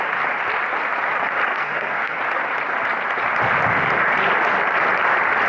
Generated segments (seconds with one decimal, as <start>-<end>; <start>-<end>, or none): 1.5-2.2